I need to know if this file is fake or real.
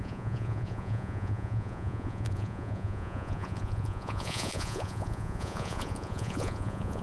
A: fake